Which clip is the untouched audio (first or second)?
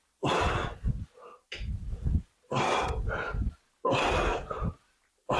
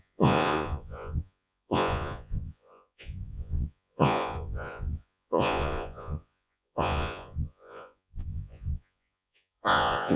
first